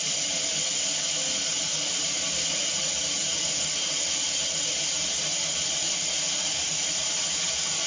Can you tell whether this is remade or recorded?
recorded